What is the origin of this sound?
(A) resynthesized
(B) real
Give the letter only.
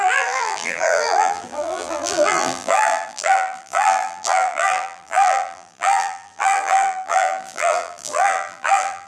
A